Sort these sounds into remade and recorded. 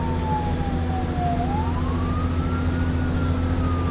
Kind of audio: recorded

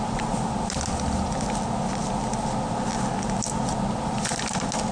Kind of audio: recorded